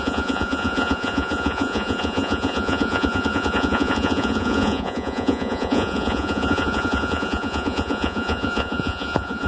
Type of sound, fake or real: fake